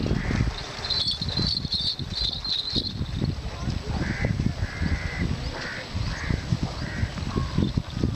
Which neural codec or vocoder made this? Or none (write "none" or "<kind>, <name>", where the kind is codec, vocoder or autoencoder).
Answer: none